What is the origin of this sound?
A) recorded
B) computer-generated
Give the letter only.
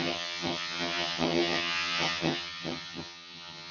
B